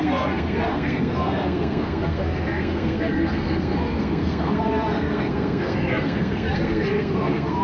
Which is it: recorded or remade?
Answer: remade